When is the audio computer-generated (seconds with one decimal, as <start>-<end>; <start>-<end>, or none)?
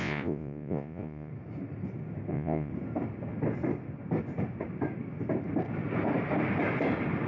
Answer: 0.0-1.3; 2.3-2.7